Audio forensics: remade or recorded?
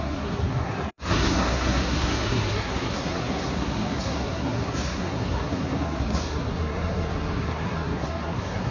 remade